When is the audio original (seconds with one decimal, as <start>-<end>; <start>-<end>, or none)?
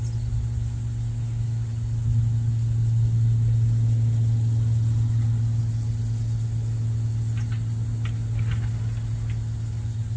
0.0-10.2